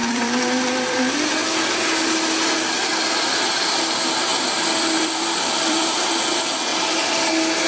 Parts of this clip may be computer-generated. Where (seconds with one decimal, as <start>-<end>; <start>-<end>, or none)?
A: 0.0-1.0; 4.3-6.0